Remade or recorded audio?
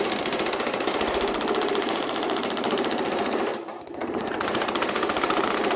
remade